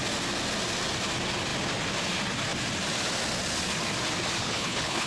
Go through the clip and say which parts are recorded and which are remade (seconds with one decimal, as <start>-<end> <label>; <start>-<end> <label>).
0.0-4.4 recorded; 4.4-5.1 remade